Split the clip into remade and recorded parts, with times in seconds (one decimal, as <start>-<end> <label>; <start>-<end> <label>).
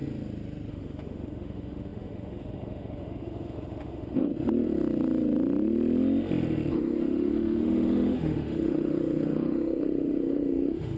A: 0.0-0.7 recorded; 0.7-4.3 remade; 4.3-6.7 recorded; 6.7-11.0 remade